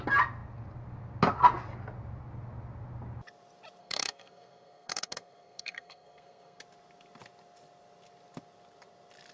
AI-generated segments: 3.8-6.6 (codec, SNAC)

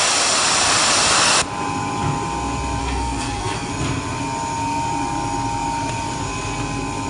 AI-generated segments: 2.8-3.7 (codec, SNAC)

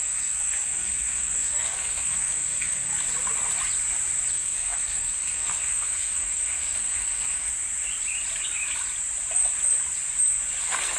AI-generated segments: 0.0-2.9 (codec, SNAC); 4.3-7.5; 10.6-11.0

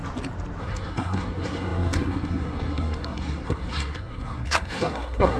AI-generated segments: 0.6-5.4 (codec, SNAC)